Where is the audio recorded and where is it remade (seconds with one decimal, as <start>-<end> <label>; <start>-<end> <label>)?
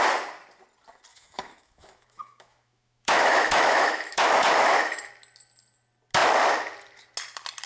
0.0-1.1 recorded; 1.1-5.1 remade; 5.1-7.7 recorded